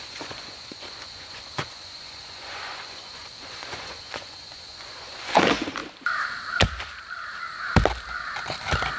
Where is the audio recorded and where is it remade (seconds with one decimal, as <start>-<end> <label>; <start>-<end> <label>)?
0.0-5.8 remade; 5.8-9.0 recorded